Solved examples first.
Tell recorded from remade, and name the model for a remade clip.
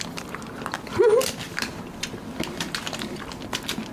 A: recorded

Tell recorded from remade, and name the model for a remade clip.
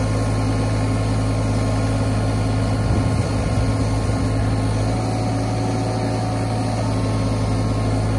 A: recorded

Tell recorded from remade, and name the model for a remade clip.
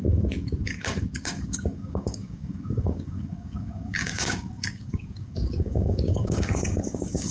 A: remade, codec, DAC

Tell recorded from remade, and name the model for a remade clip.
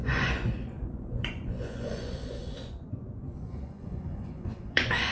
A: remade, vocoder, Vocos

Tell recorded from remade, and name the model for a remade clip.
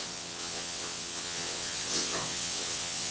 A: remade, vocoder, WaveNeXt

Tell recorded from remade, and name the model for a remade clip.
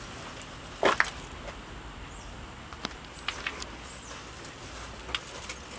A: recorded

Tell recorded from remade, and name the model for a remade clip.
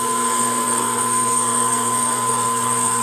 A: remade, codec, SNAC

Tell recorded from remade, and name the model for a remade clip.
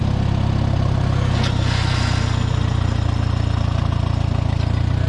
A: recorded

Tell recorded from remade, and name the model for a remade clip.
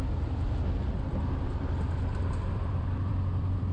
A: remade, vocoder, BigVGAN v2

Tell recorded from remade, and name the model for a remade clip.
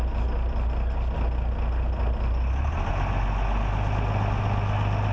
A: recorded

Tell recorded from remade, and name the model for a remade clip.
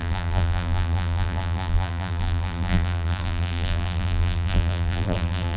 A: remade, vocoder, BigVGAN v2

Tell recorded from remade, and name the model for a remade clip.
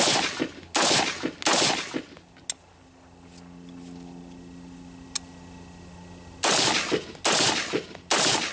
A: recorded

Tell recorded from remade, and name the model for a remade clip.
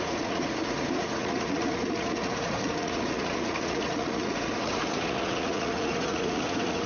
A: remade, vocoder, Vocos